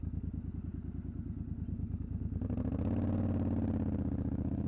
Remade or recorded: recorded